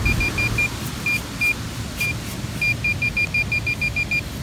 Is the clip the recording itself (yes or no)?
yes